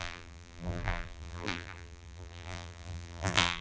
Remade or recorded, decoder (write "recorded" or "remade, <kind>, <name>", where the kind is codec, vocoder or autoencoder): remade, vocoder, BigVGAN v2